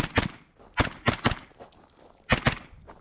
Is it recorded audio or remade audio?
recorded